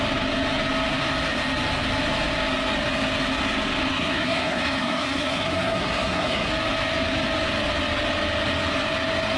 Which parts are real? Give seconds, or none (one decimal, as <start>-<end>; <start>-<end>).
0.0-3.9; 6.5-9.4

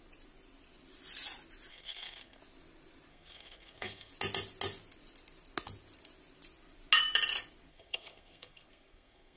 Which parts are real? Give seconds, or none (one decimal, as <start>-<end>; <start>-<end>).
0.0-1.7; 2.4-3.1; 4.1-7.7

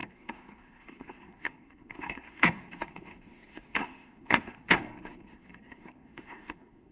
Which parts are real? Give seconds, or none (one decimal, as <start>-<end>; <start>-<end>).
none

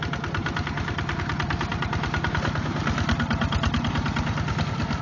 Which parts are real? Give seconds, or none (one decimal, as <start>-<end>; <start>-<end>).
0.0-5.0

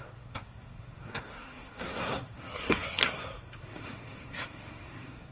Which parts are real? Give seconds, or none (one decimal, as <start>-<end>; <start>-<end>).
none

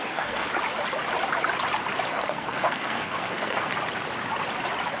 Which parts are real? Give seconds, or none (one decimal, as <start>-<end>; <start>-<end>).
0.5-2.1; 3.7-5.0